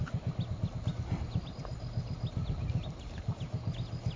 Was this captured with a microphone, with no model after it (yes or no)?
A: yes